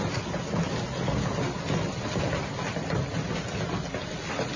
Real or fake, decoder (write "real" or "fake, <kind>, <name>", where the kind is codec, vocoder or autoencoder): real